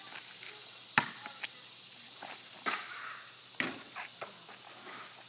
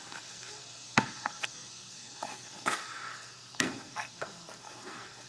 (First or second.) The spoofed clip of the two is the second